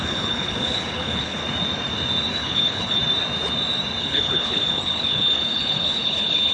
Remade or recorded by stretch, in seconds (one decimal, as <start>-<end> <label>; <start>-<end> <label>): 0.0-1.4 remade; 1.4-2.3 recorded; 2.3-3.0 remade; 3.0-4.0 recorded; 4.0-6.5 remade